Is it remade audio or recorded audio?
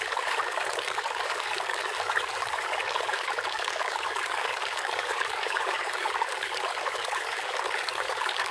remade